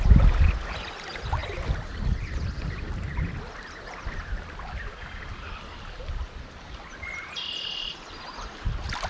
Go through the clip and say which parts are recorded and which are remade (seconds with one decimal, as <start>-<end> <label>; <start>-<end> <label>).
0.0-9.1 recorded